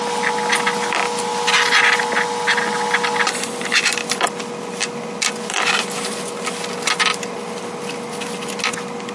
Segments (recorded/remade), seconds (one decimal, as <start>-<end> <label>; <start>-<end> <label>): 0.0-9.1 recorded